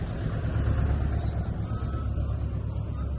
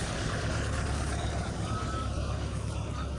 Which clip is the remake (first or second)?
second